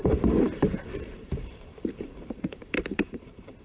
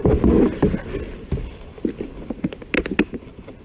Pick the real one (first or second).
second